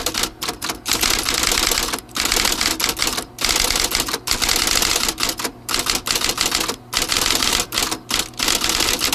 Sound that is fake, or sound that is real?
real